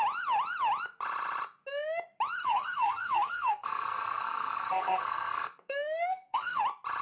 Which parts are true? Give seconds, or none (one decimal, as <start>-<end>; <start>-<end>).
0.0-2.4; 6.6-7.0